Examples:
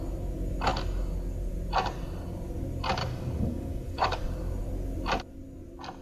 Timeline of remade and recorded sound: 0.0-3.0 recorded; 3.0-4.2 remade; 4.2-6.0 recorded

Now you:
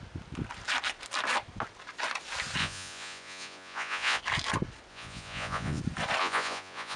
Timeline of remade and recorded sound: 0.0-2.6 recorded; 2.6-4.2 remade; 4.2-4.9 recorded; 4.9-5.8 remade; 5.8-6.2 recorded; 6.2-7.0 remade

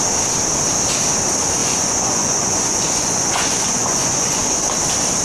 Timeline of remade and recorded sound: 0.0-1.6 recorded; 1.6-4.7 remade; 4.7-5.2 recorded

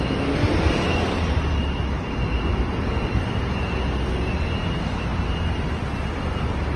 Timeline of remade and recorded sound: 0.0-6.8 recorded